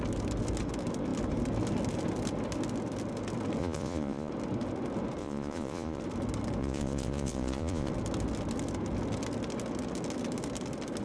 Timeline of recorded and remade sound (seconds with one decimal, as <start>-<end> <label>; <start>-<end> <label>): 0.0-3.6 recorded; 3.6-4.3 remade; 4.3-5.2 recorded; 5.2-6.0 remade; 6.0-6.6 recorded; 6.6-7.9 remade; 7.9-11.0 recorded